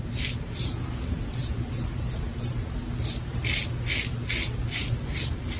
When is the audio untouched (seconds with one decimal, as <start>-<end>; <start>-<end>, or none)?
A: 0.0-5.6